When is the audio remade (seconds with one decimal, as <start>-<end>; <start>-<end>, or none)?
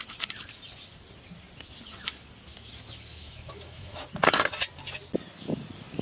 3.1-4.0